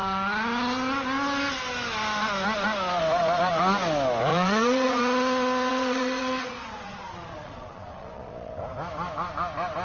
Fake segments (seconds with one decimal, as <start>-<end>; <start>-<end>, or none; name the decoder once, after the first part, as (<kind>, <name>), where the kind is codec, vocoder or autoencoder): 4.3-5.0 (vocoder, Vocos); 5.7-8.6